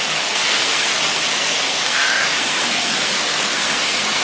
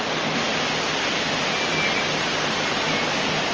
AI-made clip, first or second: first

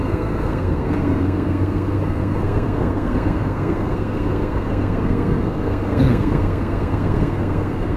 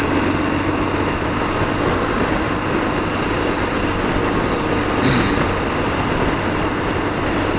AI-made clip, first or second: first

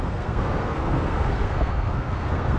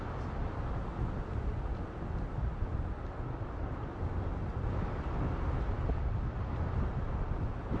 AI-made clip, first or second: first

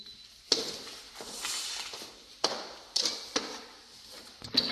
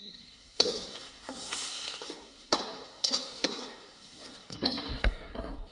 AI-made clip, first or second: second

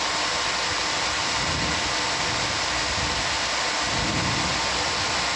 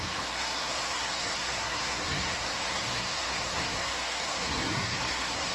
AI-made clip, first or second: second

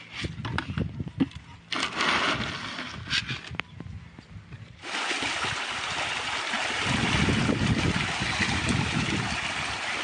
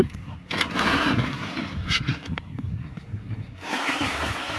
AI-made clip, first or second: second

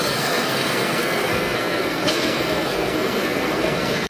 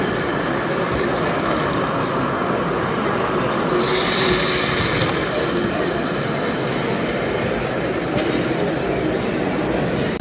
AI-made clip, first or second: first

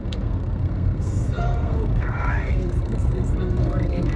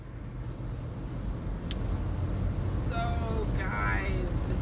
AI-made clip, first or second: first